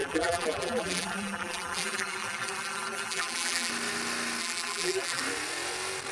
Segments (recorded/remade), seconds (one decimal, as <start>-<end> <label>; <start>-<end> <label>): 0.0-3.7 remade; 3.7-4.4 recorded; 4.4-5.2 remade; 5.2-6.1 recorded